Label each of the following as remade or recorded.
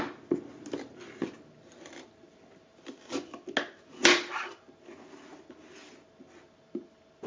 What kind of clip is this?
recorded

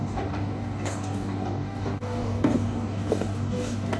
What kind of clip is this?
remade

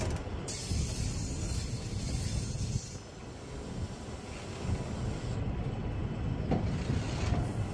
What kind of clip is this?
recorded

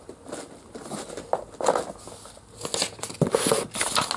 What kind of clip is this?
recorded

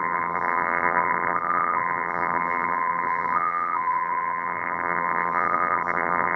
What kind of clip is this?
remade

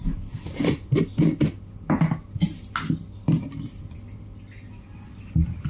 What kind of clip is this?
recorded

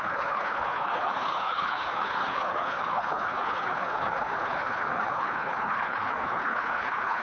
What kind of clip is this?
remade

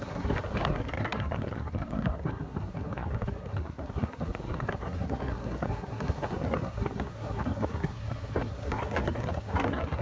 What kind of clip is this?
remade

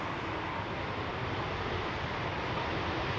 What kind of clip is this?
recorded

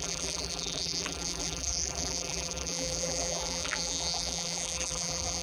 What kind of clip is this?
remade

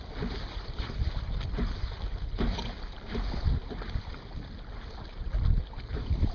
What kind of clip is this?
recorded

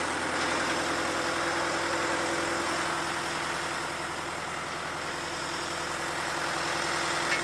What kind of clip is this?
recorded